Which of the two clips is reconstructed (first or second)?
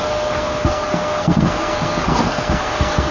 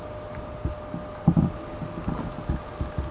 first